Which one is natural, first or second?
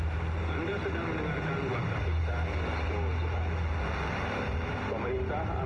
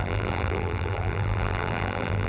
first